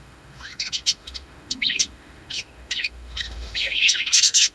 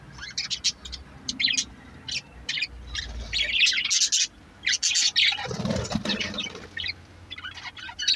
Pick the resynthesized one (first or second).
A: first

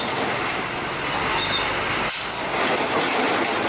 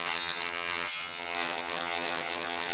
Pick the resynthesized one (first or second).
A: second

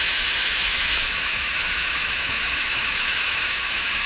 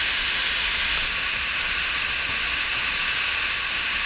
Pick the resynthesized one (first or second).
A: first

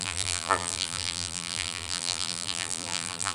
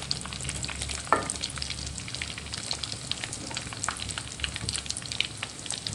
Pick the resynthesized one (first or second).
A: first